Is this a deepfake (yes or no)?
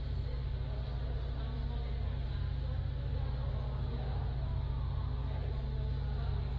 no